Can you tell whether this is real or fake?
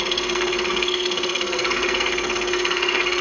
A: fake